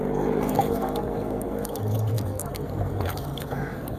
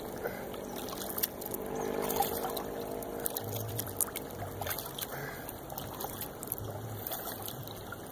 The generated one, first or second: first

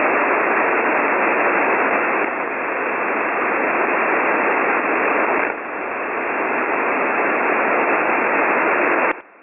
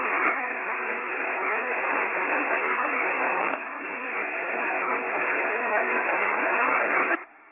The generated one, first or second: second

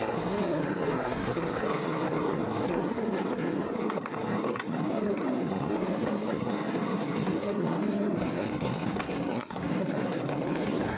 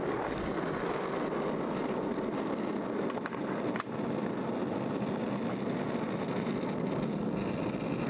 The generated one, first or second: first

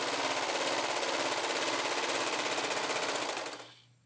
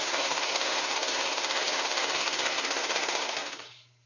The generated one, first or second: second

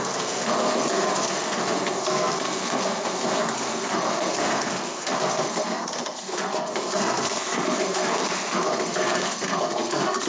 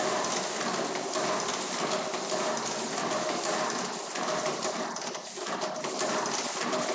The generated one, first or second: first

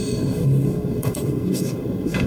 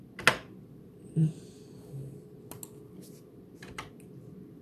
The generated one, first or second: first